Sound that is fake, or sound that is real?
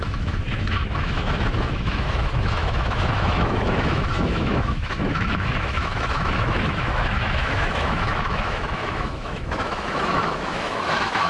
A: fake